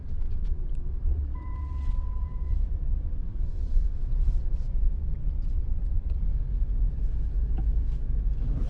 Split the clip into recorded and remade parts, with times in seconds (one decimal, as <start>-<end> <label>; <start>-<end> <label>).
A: 0.0-6.3 remade; 6.3-8.7 recorded